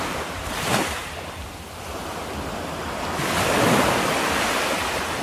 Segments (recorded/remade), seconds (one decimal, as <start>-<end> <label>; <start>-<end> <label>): 0.0-5.2 recorded